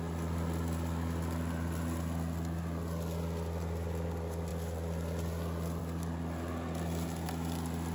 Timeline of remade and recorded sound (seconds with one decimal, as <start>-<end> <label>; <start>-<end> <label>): 0.0-7.9 recorded

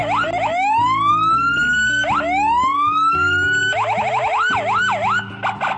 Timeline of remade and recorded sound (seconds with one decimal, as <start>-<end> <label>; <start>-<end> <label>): 0.0-5.8 recorded